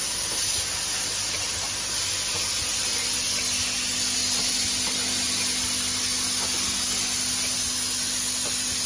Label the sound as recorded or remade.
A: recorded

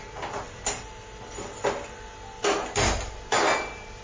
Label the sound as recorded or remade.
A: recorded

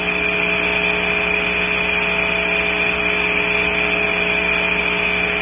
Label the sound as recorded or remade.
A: recorded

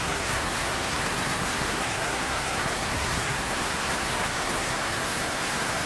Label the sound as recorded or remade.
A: remade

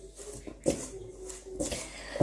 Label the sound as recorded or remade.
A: recorded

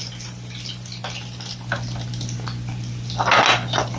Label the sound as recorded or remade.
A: recorded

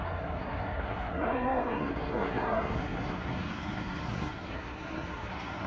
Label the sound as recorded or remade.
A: remade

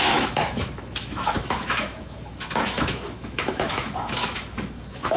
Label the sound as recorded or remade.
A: remade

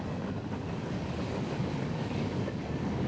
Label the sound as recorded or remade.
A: remade